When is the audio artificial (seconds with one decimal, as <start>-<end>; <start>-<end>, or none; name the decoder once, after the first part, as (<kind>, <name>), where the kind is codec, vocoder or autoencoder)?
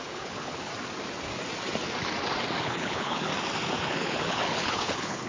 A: 0.0-0.7 (codec, HILCodec); 2.6-3.3; 3.8-5.3